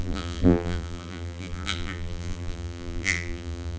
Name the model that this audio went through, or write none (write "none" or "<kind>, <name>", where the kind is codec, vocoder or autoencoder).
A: vocoder, BigVGAN v2